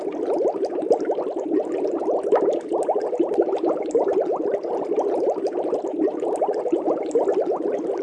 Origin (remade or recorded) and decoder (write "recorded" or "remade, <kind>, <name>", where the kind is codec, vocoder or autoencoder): recorded